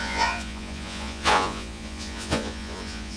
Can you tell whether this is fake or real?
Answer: fake